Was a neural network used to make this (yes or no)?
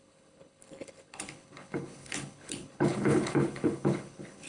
yes